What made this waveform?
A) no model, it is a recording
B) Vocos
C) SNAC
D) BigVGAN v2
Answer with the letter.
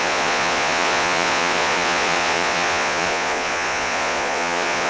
B